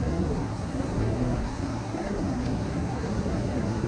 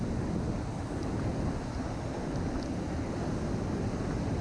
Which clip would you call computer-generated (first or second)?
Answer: first